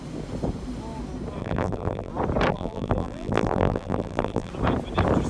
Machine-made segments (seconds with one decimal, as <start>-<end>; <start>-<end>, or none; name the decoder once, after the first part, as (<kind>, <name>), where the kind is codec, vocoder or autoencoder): 1.4-2.1 (vocoder, BigVGAN v2); 2.5-4.5